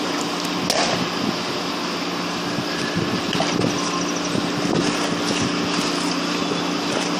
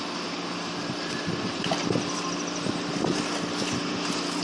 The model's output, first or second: second